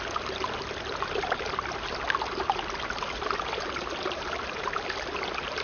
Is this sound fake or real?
real